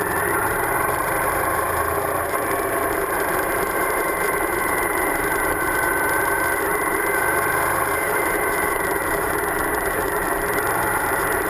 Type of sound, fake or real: fake